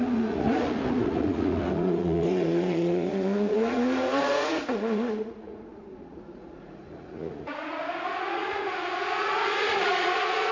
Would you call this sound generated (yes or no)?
yes